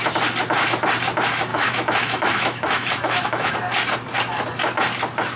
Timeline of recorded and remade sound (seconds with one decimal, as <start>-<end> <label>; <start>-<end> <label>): 0.0-1.5 recorded; 1.5-3.5 remade; 3.5-5.4 recorded